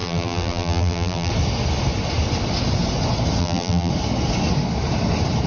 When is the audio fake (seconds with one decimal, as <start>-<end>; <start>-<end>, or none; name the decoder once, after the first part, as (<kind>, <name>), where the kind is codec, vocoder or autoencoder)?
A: 0.0-1.3 (vocoder, BigVGAN v2); 3.4-3.9